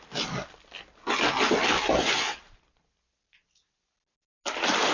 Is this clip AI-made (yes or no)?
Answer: no